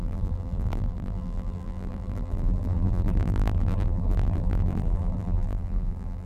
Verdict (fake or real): fake